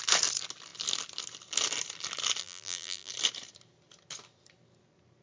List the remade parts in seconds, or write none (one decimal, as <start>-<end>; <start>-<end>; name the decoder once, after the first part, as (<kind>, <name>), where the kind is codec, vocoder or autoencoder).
2.4-3.1 (vocoder, BigVGAN v2)